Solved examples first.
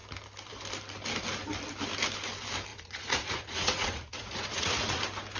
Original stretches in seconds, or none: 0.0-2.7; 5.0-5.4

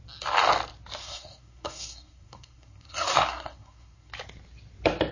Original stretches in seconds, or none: 0.0-1.0; 4.1-5.1